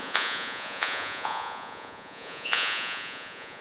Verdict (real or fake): fake